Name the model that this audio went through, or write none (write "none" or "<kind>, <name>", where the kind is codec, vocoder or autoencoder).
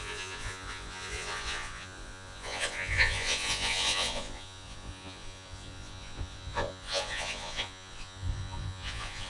vocoder, Vocos